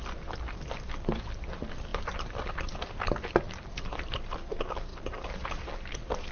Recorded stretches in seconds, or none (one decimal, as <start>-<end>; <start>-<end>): 0.0-6.3